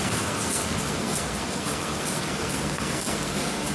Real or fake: fake